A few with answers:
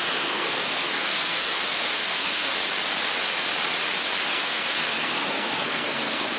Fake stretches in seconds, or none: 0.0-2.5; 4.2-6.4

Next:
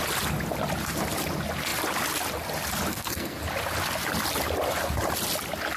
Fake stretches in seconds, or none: 2.9-3.4

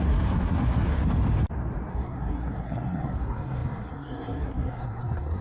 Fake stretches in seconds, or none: 0.0-1.0; 1.9-5.4

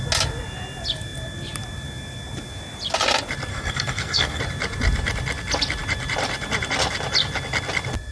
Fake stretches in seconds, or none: 3.5-4.4